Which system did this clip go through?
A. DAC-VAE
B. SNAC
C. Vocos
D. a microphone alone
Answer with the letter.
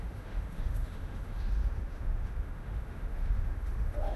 A